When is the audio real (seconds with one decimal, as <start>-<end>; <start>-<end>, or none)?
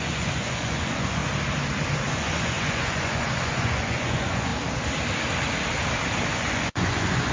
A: 1.2-2.1; 4.5-6.3